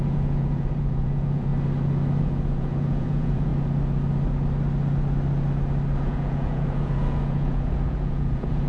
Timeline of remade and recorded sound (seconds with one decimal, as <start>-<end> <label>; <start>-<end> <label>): 0.0-1.5 remade; 1.5-2.2 recorded; 2.2-3.5 remade; 3.5-6.0 recorded; 6.0-8.7 remade